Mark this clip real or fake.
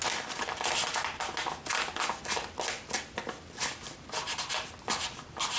real